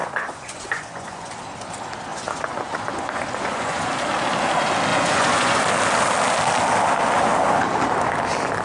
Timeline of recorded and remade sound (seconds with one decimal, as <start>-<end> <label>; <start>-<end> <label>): 0.0-1.3 remade; 1.3-2.1 recorded; 2.1-3.9 remade; 3.9-4.9 recorded; 4.9-5.6 remade; 5.6-8.6 recorded